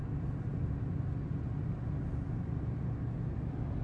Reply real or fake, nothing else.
real